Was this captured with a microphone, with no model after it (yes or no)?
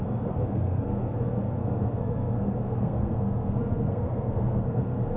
no